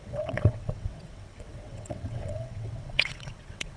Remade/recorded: remade